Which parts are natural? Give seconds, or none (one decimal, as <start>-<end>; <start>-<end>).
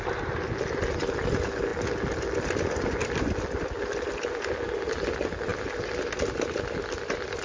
0.0-7.4